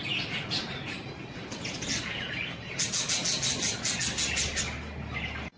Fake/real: real